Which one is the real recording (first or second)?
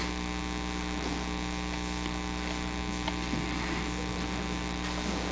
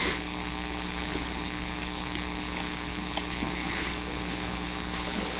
first